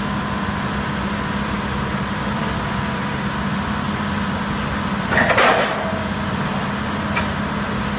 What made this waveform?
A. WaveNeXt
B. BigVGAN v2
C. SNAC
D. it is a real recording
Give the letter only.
D